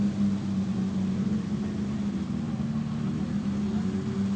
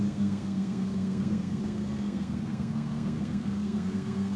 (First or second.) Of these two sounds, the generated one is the second